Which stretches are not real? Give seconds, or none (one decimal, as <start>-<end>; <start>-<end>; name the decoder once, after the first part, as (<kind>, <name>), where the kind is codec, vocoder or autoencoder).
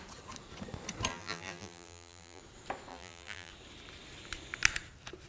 1.1-2.4 (vocoder, BigVGAN v2); 2.9-3.5